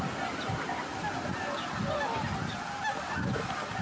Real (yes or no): yes